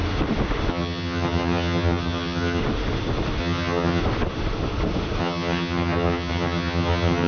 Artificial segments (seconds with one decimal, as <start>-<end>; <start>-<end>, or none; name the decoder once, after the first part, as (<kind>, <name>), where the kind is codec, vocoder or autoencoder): 0.7-2.6 (vocoder, HiFi-GAN); 3.4-4.0; 5.2-7.3

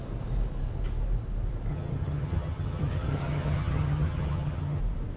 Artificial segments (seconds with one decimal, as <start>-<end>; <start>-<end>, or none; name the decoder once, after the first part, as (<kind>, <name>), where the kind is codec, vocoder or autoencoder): 1.7-4.8 (vocoder, HiFi-GAN)